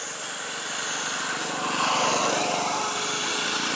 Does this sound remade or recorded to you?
recorded